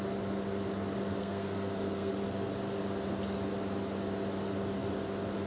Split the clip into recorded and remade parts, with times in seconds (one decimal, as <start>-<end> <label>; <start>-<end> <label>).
0.0-1.2 recorded; 1.2-2.1 remade; 2.1-5.5 recorded